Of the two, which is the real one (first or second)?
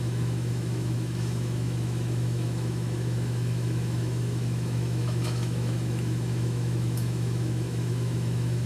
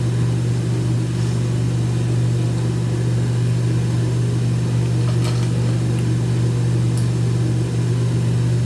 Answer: second